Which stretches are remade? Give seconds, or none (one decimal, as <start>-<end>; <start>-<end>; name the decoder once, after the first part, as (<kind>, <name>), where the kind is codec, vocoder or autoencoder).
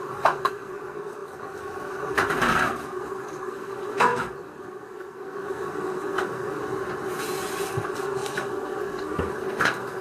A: 0.0-6.6 (codec, SNAC); 7.7-10.0